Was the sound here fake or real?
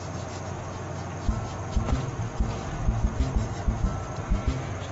real